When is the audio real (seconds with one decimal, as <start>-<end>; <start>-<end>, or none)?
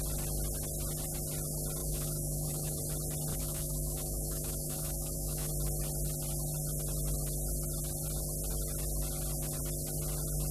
0.0-1.8; 2.8-3.3; 5.5-10.5